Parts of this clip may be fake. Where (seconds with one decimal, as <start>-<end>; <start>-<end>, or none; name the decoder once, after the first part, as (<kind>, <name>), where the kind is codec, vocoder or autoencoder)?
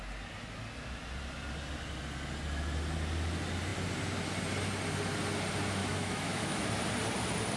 5.8-6.7 (autoencoder, DAC-VAE)